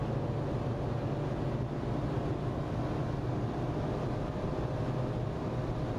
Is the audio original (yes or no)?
yes